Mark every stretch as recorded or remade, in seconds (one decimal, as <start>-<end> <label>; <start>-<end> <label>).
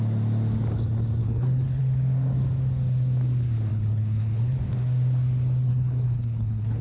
0.0-1.2 recorded; 1.2-1.8 remade; 1.8-3.7 recorded; 3.7-4.6 remade; 4.6-5.7 recorded; 5.7-6.8 remade